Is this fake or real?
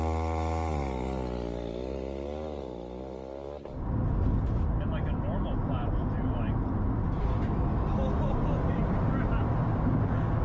real